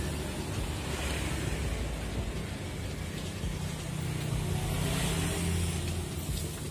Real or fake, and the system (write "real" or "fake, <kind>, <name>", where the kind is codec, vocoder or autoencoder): real